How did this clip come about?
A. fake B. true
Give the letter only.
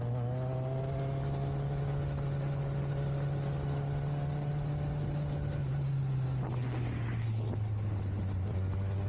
B